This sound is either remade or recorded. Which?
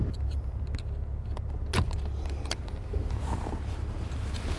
recorded